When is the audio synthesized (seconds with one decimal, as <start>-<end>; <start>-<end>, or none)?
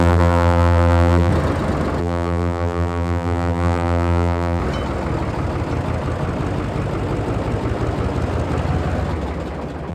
0.0-1.3; 2.0-4.6